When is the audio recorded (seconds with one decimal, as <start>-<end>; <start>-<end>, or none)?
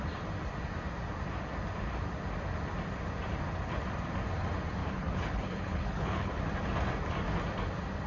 0.0-4.8; 6.3-8.1